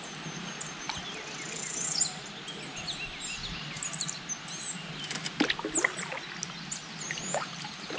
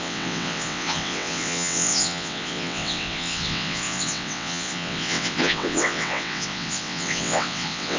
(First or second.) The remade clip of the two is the second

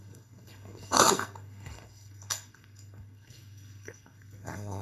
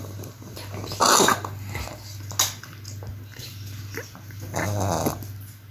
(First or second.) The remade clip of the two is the first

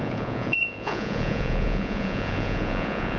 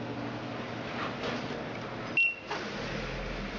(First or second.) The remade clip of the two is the first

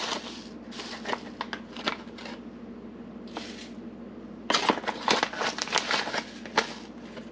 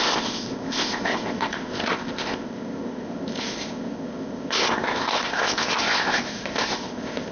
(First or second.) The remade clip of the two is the second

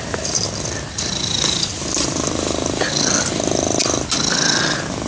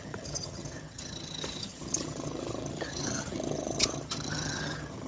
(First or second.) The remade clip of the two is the second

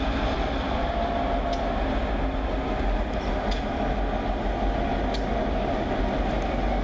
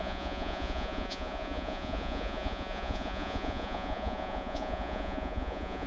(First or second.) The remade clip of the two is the second